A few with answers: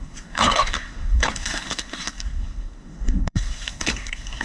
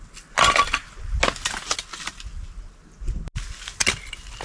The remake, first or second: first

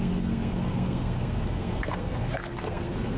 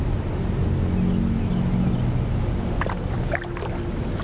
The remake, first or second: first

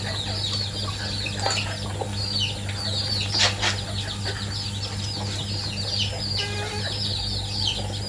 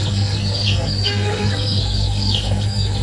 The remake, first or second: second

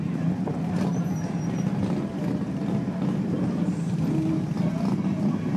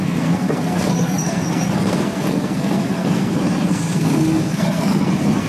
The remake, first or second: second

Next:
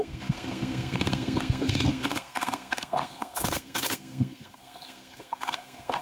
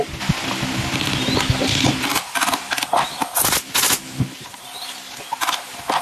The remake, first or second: first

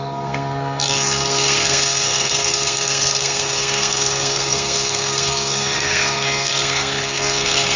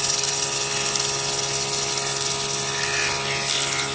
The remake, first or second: first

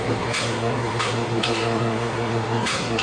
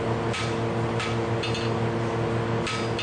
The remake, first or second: first